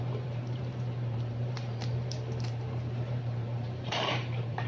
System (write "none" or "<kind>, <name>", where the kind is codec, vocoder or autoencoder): vocoder, BigVGAN v2